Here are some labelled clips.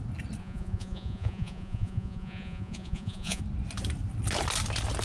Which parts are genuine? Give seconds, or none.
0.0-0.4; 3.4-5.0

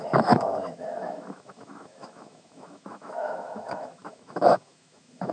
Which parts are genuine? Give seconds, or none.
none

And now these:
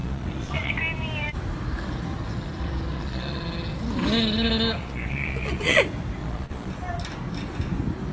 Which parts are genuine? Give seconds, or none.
0.7-2.9; 3.4-4.8; 5.8-6.2; 6.7-8.1

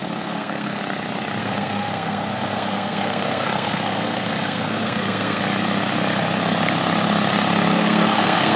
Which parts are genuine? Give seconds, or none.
0.8-1.4; 5.4-7.7